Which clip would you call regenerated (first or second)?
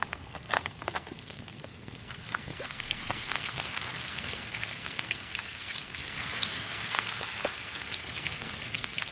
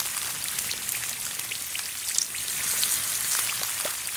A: first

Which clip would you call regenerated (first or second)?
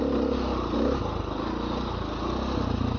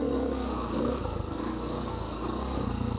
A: second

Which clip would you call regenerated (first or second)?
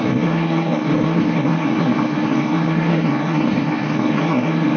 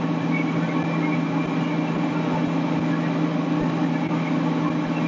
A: first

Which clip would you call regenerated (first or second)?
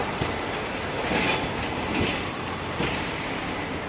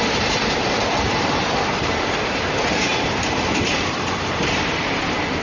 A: second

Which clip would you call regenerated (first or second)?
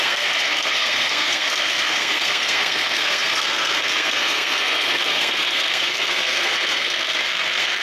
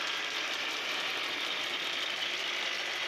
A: first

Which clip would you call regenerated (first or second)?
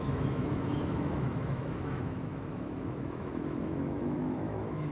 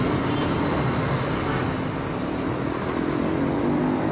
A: first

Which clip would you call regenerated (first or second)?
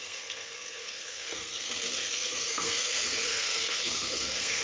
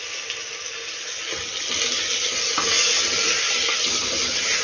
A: first